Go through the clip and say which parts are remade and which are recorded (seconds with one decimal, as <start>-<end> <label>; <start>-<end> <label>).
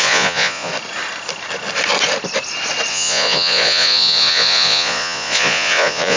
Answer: 0.0-0.7 remade; 0.7-2.9 recorded; 2.9-6.2 remade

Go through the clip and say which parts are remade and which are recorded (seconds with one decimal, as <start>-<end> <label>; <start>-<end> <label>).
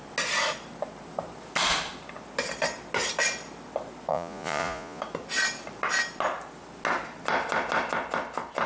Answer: 0.0-4.1 recorded; 4.1-5.0 remade; 5.0-8.7 recorded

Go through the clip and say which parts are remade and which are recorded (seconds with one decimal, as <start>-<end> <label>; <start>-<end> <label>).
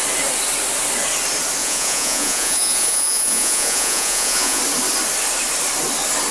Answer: 0.0-1.6 recorded; 1.6-4.6 remade; 4.6-6.3 recorded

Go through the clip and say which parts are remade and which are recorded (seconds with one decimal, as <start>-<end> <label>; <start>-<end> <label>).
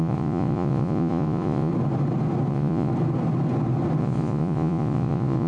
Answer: 0.0-1.7 remade; 1.7-2.5 recorded; 2.5-2.9 remade; 2.9-4.0 recorded; 4.0-5.5 remade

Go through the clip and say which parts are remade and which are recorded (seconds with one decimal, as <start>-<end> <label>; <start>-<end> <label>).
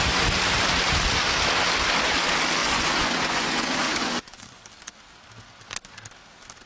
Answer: 0.0-2.6 recorded; 2.6-4.6 remade; 4.6-6.7 recorded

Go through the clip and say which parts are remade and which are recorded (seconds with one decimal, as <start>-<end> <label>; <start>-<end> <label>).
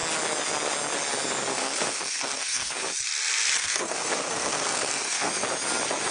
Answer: 0.0-1.5 recorded; 1.5-2.7 remade; 2.7-3.6 recorded; 3.6-5.3 remade; 5.3-6.1 recorded